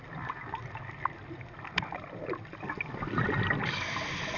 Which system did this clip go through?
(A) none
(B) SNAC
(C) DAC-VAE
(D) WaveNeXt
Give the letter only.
A